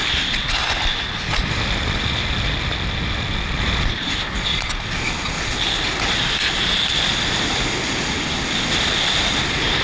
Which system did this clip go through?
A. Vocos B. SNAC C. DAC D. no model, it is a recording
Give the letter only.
D